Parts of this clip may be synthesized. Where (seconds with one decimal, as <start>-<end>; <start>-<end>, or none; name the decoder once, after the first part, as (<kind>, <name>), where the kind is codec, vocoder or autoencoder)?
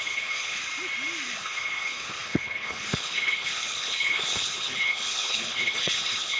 0.0-0.6 (codec, HILCodec); 1.3-6.4